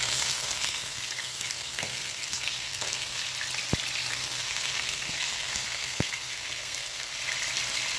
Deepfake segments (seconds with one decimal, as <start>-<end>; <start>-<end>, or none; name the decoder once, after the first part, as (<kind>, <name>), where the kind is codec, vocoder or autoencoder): 0.0-3.2 (codec, SNAC); 4.1-7.1